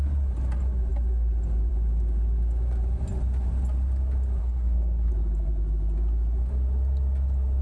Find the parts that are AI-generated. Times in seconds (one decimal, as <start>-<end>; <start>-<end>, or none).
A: 4.4-5.1